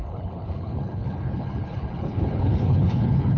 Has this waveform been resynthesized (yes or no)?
yes